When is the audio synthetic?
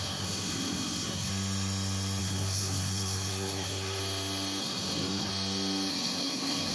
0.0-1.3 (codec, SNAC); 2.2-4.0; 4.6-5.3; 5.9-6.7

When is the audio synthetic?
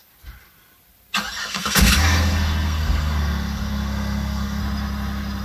1.4-4.6 (codec, SNAC)